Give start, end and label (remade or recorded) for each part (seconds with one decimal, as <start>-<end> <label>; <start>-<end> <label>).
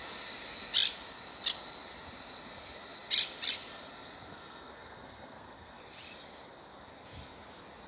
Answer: 0.0-4.3 recorded; 4.3-5.8 remade; 5.8-7.9 recorded